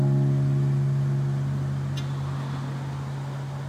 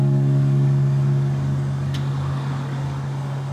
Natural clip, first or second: first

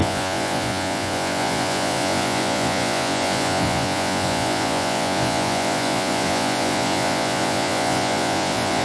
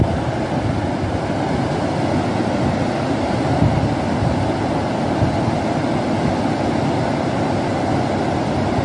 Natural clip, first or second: second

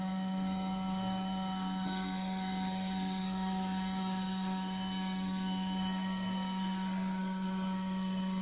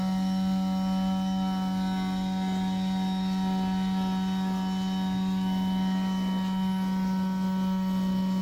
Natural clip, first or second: second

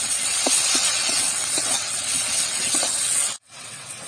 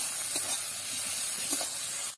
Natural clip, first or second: second